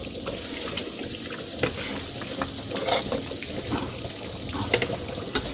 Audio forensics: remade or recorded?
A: recorded